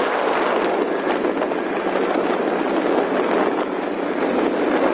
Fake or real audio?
real